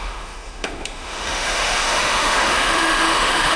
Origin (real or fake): fake